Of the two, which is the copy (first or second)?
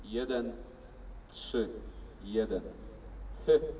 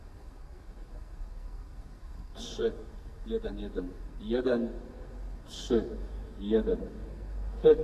second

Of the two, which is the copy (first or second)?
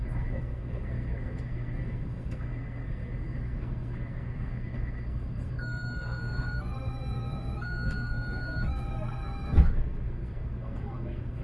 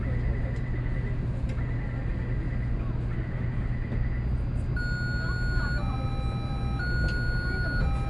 first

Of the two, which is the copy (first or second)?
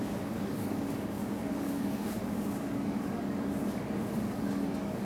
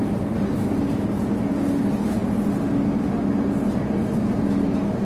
first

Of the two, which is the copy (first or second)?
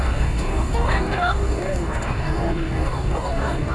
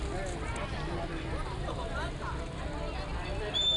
first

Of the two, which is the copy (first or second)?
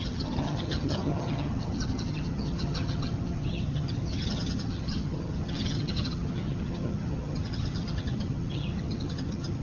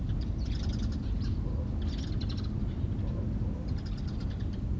first